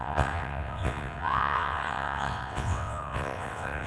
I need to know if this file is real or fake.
fake